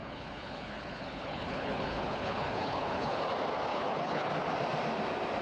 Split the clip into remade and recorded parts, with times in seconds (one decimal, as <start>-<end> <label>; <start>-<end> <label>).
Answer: 0.0-3.2 remade; 3.2-3.7 recorded; 3.7-4.3 remade; 4.3-5.4 recorded